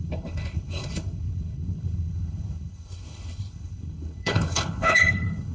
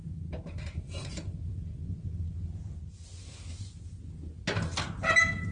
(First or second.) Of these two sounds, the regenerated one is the first